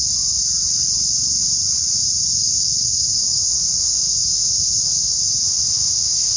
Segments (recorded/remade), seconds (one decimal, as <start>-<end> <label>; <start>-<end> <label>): 0.0-2.4 recorded; 2.4-6.4 remade